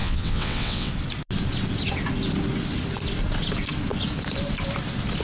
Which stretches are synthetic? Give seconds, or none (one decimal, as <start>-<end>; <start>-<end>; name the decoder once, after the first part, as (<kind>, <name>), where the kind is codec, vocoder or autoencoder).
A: 0.0-0.9 (vocoder, WaveNeXt)

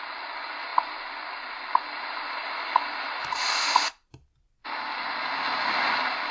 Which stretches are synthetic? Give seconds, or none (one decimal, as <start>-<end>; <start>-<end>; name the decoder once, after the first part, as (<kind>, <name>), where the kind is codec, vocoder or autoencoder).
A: none

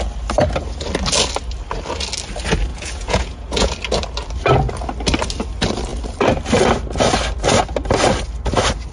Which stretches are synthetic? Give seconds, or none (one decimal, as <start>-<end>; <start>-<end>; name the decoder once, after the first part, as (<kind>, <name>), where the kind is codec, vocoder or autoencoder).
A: 2.7-3.7 (vocoder, Vocos)

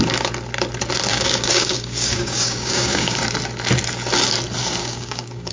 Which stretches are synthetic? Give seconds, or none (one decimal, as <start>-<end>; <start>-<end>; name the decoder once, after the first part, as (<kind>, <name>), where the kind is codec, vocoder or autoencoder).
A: 1.1-3.2 (codec, DAC); 4.8-5.5